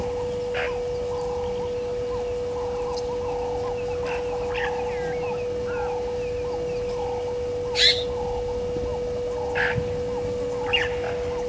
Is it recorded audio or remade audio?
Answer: recorded